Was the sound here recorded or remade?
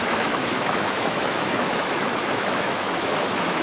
remade